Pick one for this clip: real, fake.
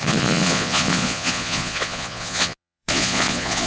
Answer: fake